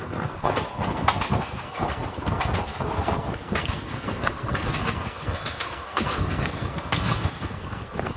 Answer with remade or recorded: remade